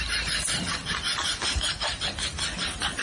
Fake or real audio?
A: real